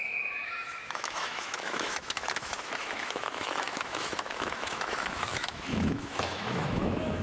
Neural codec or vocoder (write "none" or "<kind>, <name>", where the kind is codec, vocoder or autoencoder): autoencoder, DAC-VAE